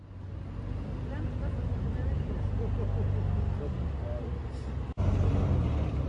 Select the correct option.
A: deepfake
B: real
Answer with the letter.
B